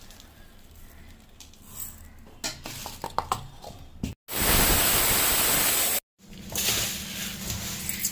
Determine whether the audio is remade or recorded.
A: recorded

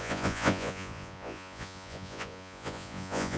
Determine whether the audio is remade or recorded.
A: remade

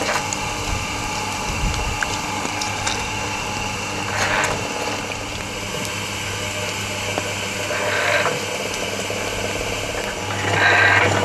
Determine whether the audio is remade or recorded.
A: recorded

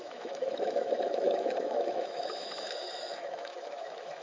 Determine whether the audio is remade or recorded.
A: remade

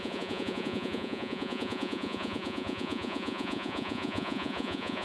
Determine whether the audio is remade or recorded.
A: remade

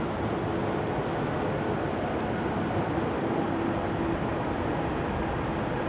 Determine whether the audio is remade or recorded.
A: recorded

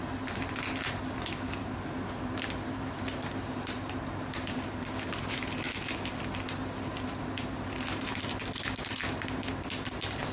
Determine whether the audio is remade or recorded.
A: recorded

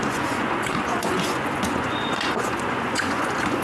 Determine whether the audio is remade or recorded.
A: remade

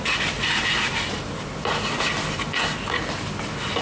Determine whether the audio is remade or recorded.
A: recorded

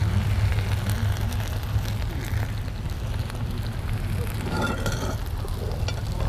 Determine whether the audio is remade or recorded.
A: recorded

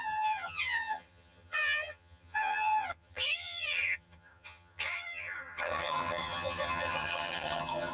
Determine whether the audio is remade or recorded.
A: remade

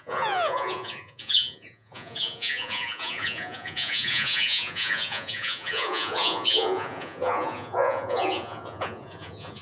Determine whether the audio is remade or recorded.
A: remade